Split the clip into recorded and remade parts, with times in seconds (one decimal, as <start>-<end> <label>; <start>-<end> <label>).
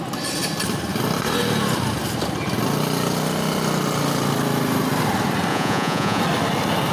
0.0-5.5 recorded; 5.5-6.2 remade; 6.2-6.9 recorded